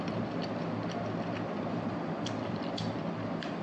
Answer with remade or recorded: remade